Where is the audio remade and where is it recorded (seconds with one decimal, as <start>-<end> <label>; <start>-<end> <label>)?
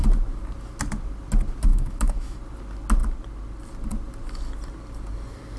0.0-1.7 recorded; 1.7-2.4 remade; 2.4-5.6 recorded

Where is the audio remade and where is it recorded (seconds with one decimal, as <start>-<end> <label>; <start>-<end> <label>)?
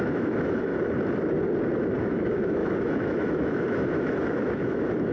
0.0-0.7 remade; 0.7-2.0 recorded; 2.0-5.1 remade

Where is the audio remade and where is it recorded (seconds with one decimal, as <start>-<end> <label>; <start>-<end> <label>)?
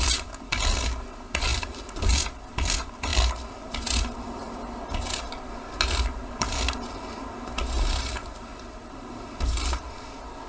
0.0-10.5 recorded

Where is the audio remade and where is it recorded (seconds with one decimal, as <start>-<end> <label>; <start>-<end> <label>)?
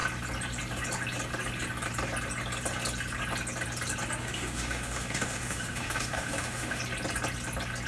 0.0-4.2 recorded; 4.2-6.8 remade; 6.8-7.9 recorded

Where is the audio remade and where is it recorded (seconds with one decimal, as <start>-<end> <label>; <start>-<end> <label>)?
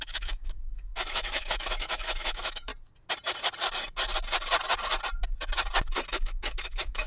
0.0-2.7 remade; 2.7-6.1 recorded; 6.1-7.1 remade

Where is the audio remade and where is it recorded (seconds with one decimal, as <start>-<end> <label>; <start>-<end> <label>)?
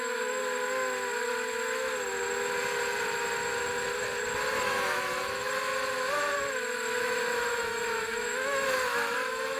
0.0-0.4 remade; 0.4-4.6 recorded; 4.6-5.7 remade; 5.7-7.0 recorded; 7.0-9.6 remade